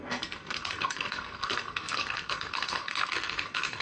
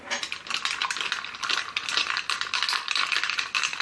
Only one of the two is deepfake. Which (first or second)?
first